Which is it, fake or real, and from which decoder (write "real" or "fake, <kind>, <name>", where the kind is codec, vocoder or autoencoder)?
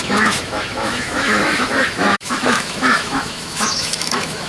fake, autoencoder, DAC-VAE